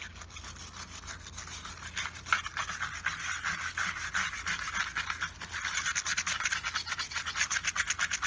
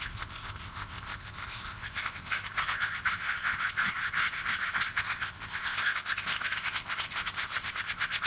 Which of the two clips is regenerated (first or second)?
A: second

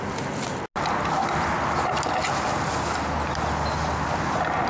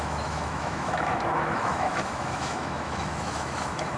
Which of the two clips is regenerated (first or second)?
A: second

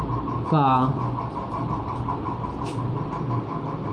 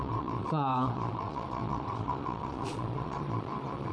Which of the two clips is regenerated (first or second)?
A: second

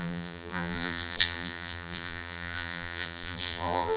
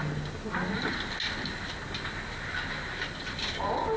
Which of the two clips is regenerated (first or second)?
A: first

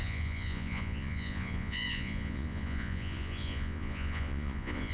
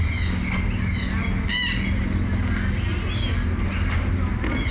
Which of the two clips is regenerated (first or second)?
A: first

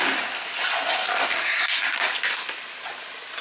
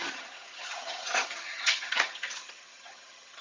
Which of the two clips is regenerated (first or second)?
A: second